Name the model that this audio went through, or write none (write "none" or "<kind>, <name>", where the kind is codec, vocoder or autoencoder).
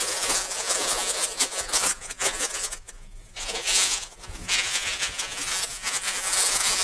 vocoder, Vocos